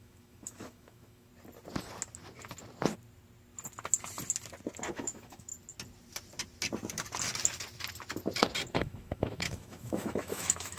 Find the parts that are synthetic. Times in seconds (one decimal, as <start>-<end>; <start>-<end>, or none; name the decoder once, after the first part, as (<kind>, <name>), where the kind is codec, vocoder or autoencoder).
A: 0.0-1.3 (autoencoder, DAC-VAE); 4.9-5.5; 8.7-10.8